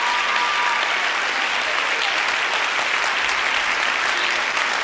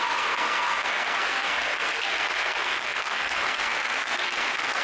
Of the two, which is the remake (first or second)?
second